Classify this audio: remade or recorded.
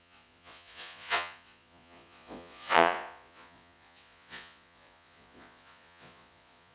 remade